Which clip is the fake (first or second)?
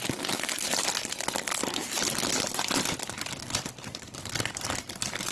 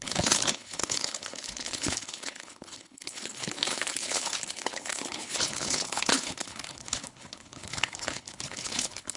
second